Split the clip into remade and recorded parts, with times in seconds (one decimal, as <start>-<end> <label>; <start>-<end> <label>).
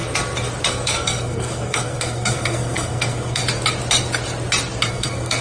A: 0.0-0.7 recorded; 0.7-3.4 remade; 3.4-4.9 recorded; 4.9-5.4 remade